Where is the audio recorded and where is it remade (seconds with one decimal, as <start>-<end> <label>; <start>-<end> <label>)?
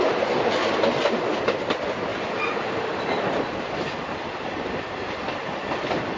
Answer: 0.0-0.6 remade; 0.6-1.3 recorded; 1.3-6.2 remade